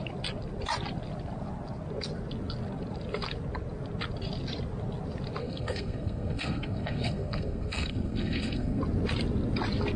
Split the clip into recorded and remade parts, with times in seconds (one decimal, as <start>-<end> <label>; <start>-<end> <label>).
0.0-5.4 recorded; 5.4-8.8 remade; 8.8-10.0 recorded